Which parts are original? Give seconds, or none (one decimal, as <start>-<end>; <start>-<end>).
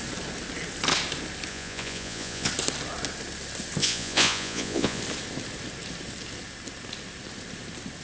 0.0-1.5; 2.5-3.8; 5.0-8.0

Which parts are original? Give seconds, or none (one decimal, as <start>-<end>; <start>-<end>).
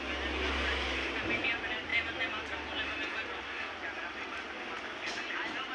0.0-5.7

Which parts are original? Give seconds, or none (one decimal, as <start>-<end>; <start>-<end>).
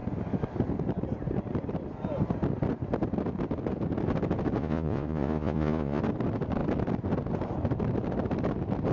0.0-4.6; 6.0-8.9